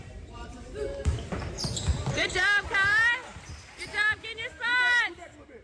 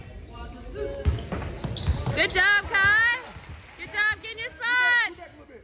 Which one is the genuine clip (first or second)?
second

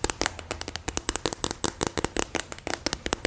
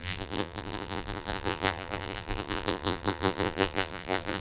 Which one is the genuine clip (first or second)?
first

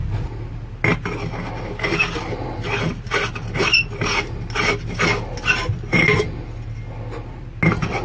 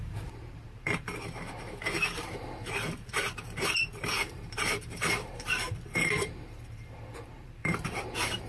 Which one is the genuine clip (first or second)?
first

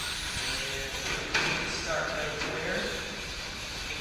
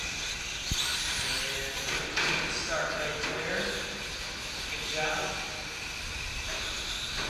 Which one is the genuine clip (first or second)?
second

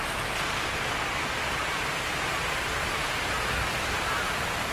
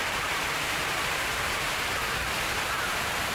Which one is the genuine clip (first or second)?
first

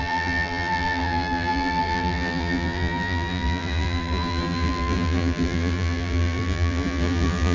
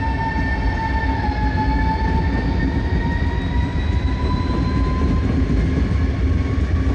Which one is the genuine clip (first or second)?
second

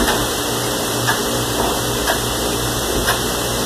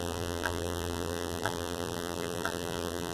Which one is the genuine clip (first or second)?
first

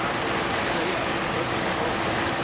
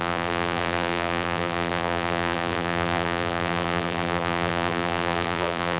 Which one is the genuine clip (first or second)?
first